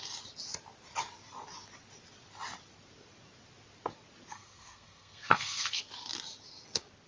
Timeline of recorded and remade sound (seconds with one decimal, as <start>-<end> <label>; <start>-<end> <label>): 0.0-4.3 recorded; 4.3-5.8 remade; 5.8-7.1 recorded